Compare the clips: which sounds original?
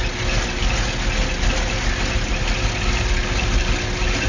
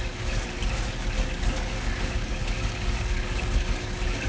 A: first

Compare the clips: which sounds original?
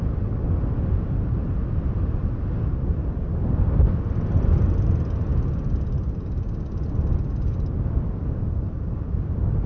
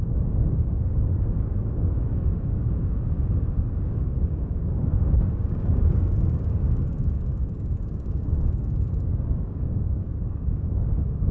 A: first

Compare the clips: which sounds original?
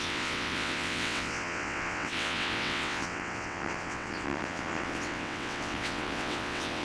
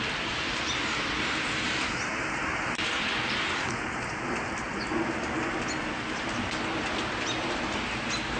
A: second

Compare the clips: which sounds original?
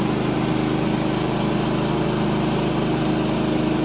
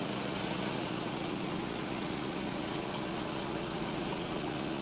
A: first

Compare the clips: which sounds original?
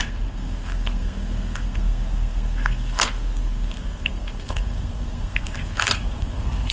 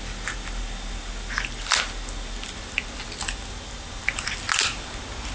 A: second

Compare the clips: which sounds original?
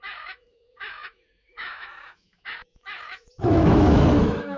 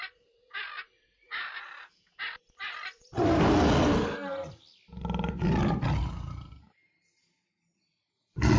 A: second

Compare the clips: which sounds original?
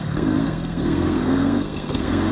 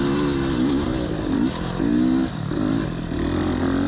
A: second